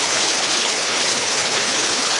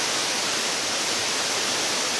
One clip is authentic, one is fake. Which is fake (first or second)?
first